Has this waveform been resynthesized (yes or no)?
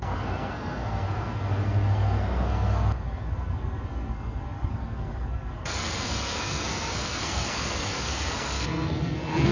yes